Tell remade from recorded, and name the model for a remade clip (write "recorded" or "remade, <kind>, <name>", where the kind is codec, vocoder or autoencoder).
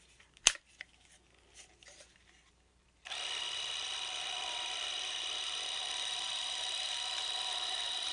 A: remade, vocoder, BigVGAN v2